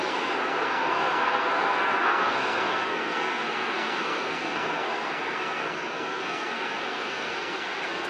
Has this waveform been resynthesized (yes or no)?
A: yes